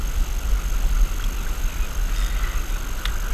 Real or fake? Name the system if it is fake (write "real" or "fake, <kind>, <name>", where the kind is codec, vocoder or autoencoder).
real